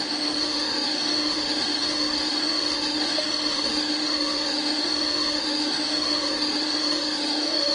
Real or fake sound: fake